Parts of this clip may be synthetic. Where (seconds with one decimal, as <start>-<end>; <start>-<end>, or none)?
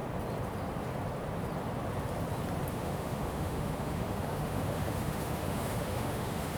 2.7-6.6